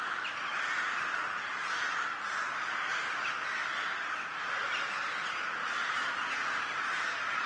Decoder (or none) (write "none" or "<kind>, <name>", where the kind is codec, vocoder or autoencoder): none